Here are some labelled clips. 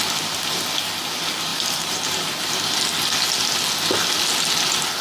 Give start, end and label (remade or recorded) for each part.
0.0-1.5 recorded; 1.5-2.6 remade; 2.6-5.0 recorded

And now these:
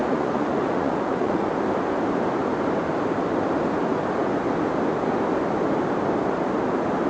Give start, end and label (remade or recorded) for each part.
0.0-1.5 remade; 1.5-7.1 recorded

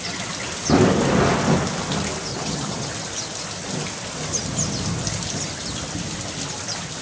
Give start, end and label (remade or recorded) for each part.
0.0-2.3 recorded; 2.3-2.9 remade; 2.9-7.0 recorded